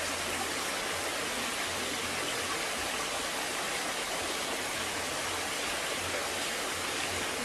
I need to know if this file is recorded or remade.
recorded